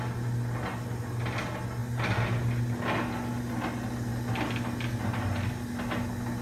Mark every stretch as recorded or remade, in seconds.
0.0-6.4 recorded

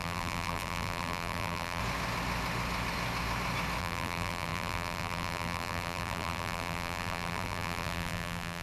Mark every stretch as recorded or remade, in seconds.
0.0-1.8 remade; 1.8-3.8 recorded; 3.8-8.6 remade